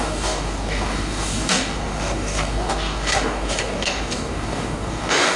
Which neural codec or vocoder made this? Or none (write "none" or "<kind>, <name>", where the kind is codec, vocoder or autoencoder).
codec, DAC